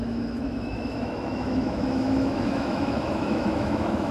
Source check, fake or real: fake